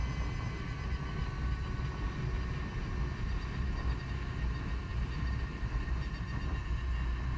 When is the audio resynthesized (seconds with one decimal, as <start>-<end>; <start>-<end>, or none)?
none